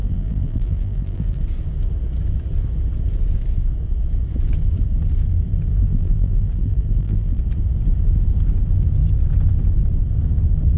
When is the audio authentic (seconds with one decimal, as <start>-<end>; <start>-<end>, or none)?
1.4-5.7; 7.4-10.8